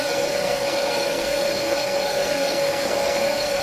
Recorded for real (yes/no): no